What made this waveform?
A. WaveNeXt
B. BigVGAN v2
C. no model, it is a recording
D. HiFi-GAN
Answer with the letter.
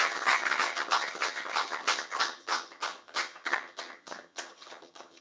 D